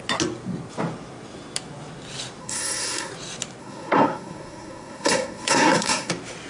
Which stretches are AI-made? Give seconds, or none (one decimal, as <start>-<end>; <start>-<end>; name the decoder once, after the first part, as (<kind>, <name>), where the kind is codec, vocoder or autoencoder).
2.4-3.1 (codec, SNAC); 3.6-6.1